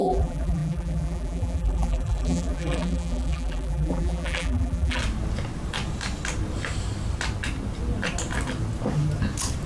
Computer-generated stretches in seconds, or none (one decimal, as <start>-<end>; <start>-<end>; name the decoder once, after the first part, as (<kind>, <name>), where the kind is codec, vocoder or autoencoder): 0.0-5.0 (vocoder, BigVGAN v2)